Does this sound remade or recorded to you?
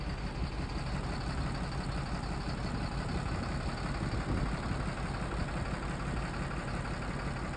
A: recorded